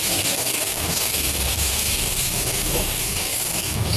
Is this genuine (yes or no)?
no